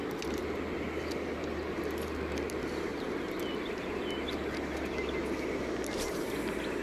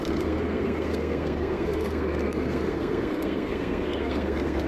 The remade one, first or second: second